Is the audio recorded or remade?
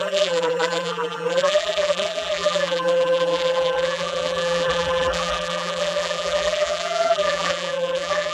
remade